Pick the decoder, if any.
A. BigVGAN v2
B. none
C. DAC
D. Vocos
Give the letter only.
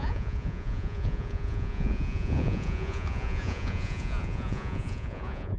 D